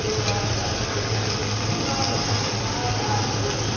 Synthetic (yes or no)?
no